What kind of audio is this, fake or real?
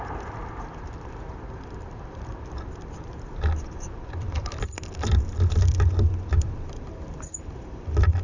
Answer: fake